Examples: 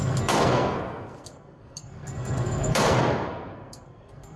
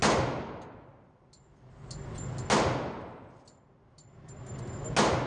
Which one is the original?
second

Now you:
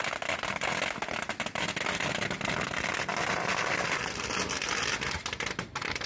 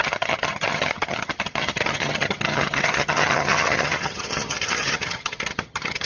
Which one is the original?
first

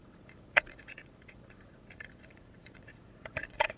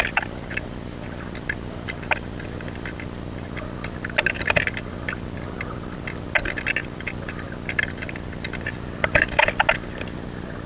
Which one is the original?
second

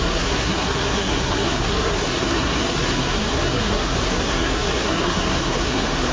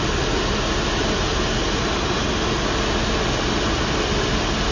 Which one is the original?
second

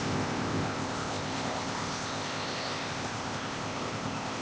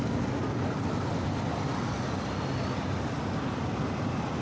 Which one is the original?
second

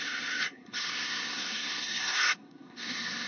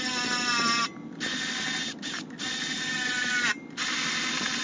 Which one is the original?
second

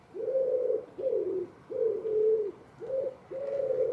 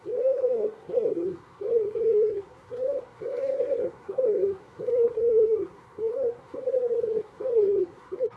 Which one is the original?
first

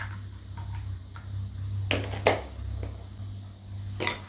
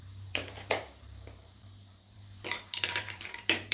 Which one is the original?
first